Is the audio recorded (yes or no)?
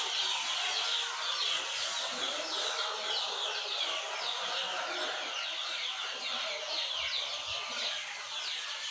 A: yes